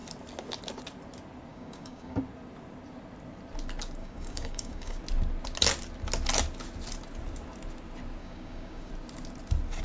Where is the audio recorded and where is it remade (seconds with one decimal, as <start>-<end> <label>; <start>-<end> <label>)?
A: 0.0-1.5 recorded; 1.5-2.2 remade; 2.2-4.0 recorded; 4.0-5.0 remade; 5.0-8.2 recorded; 8.2-8.9 remade; 8.9-9.8 recorded